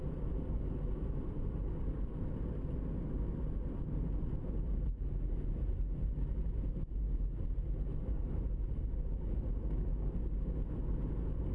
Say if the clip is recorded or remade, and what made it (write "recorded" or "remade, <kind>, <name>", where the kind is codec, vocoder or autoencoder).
recorded